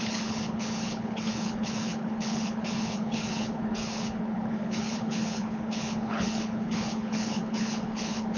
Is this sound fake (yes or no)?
yes